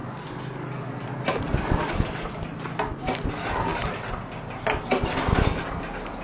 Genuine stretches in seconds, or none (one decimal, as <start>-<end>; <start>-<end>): 0.0-6.2